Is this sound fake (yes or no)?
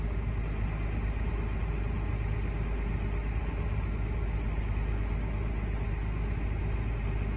no